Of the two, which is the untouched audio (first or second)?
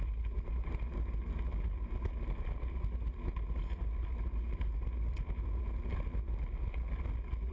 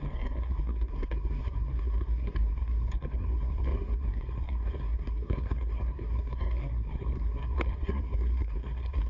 first